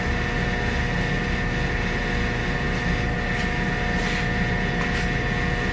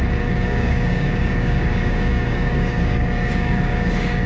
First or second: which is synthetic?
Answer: second